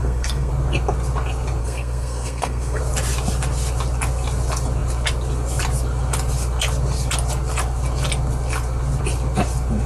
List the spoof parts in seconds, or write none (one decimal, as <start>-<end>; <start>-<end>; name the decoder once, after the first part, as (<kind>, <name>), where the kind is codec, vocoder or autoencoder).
0.0-0.5 (codec, SNAC); 1.6-2.8